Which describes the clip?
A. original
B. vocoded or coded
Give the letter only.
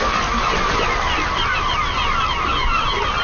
A